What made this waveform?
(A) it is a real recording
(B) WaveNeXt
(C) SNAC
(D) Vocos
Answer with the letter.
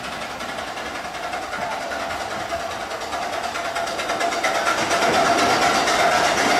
A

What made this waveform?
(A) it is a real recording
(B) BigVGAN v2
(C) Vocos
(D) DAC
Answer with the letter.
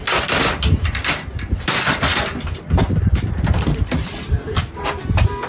A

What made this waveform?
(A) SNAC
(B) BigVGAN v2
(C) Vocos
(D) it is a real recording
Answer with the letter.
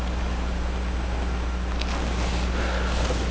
D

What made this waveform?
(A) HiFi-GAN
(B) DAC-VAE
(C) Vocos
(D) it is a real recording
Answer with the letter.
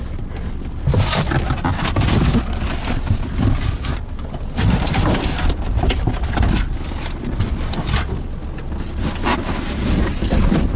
D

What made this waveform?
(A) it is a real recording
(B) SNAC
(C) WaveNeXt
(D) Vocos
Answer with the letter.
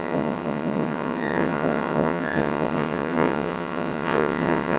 C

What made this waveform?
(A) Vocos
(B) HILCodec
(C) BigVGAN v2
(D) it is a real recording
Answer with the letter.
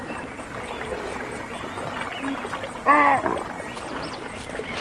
D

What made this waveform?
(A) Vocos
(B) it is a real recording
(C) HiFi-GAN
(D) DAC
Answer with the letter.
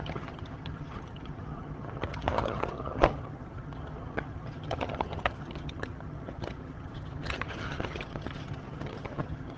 C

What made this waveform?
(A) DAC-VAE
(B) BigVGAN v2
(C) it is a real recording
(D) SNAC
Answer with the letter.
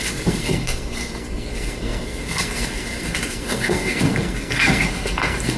D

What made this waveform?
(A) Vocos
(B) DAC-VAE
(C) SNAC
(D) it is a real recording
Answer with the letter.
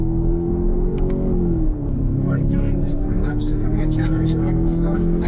C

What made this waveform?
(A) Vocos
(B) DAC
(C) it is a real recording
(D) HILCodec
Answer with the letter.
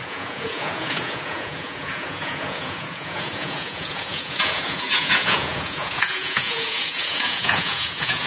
A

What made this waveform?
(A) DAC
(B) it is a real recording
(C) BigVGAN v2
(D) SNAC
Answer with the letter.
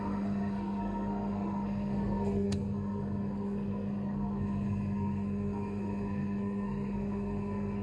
D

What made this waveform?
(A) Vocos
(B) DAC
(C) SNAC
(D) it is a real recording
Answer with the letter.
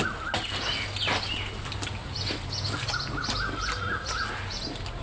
D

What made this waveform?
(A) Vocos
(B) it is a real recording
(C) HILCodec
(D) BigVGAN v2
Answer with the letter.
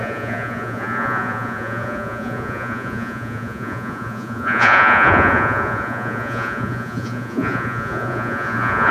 A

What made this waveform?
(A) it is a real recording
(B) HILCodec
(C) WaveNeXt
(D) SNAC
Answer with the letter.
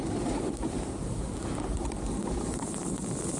A